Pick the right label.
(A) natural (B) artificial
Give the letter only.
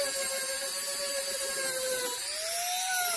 A